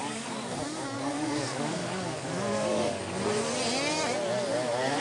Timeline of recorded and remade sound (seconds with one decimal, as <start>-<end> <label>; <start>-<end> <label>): 0.0-3.0 remade; 3.0-5.0 recorded